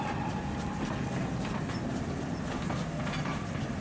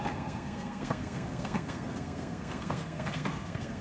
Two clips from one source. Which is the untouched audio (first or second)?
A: first